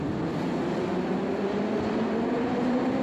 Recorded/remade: recorded